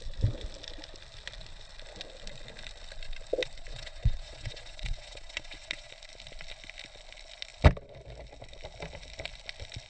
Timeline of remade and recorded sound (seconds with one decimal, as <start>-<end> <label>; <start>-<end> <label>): 0.0-3.7 recorded; 3.7-5.9 remade; 5.9-9.9 recorded